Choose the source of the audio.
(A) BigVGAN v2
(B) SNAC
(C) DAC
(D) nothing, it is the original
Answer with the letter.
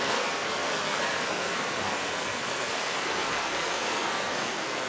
B